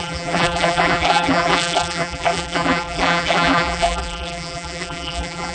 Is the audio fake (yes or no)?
yes